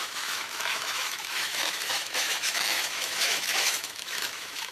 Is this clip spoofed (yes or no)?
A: yes